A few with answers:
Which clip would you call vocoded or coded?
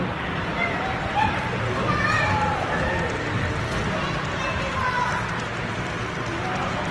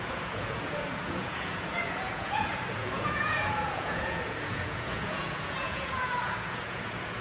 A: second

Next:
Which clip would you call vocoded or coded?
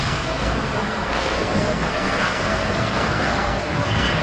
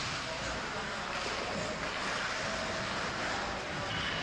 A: first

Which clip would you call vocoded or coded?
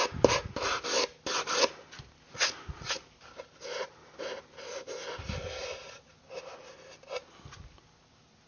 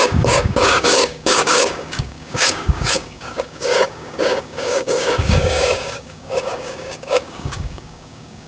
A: second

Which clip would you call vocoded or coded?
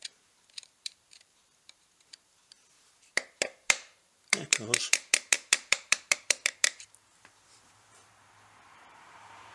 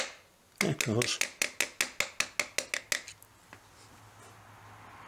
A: first